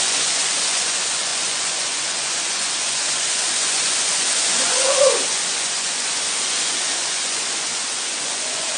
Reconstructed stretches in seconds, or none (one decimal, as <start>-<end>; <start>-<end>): 0.0-8.8